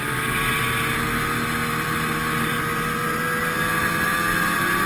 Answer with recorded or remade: recorded